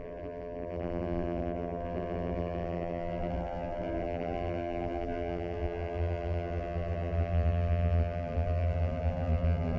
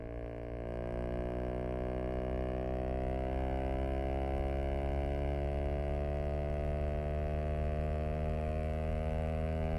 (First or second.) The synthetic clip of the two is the first